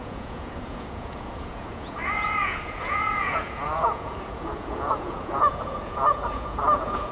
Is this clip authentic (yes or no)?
no